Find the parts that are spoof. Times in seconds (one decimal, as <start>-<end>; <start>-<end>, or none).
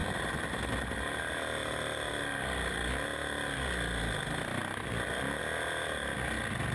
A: none